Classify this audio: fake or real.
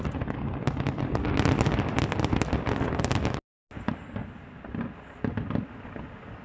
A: real